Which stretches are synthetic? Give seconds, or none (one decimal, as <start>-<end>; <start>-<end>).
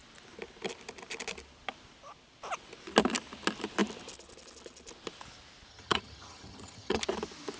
5.7-7.0